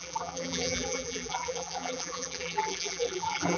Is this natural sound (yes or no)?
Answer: no